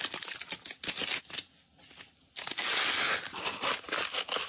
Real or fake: real